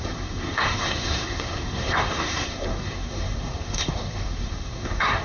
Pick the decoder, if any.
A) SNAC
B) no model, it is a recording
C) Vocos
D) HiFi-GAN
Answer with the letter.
A